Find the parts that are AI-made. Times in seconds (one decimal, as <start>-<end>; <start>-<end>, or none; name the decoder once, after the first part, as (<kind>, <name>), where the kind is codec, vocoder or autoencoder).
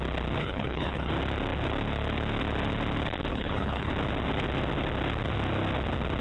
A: 0.4-1.1 (codec, HILCodec); 3.3-3.9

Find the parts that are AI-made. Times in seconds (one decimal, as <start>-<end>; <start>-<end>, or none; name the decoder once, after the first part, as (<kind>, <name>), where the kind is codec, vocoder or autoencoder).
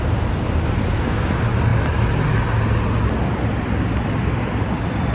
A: none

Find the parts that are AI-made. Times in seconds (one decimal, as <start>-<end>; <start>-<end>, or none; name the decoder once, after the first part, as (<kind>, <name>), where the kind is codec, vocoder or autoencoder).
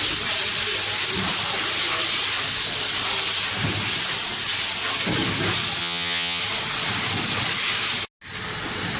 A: 5.8-6.4 (vocoder, HiFi-GAN)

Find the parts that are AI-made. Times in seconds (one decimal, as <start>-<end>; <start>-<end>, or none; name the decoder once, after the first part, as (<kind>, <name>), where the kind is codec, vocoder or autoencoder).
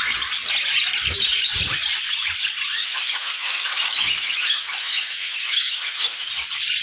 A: 2.8-6.3 (autoencoder, DAC-VAE)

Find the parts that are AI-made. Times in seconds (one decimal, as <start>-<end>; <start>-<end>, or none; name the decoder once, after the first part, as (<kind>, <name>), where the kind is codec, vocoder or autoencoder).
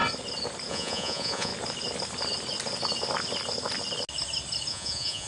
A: 0.7-1.5 (vocoder, Vocos); 4.7-5.3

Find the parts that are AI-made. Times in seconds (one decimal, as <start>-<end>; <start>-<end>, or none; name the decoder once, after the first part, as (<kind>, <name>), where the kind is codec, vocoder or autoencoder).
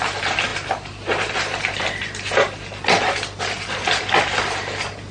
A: 0.5-3.4 (vocoder, BigVGAN v2)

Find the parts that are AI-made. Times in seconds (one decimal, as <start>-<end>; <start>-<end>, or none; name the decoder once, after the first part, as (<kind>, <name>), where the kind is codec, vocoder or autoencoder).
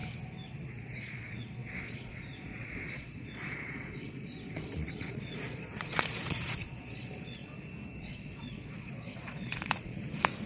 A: 0.7-7.4 (vocoder, Vocos); 8.0-10.5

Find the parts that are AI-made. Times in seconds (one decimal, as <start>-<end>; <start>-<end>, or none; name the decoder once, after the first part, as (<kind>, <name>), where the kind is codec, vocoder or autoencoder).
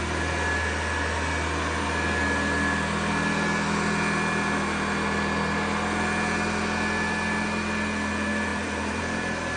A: 8.5-9.0 (vocoder, BigVGAN v2)